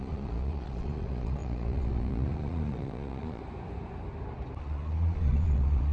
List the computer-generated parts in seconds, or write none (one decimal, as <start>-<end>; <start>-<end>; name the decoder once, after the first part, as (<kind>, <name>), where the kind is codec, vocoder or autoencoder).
0.0-3.4 (vocoder, Vocos); 4.6-5.9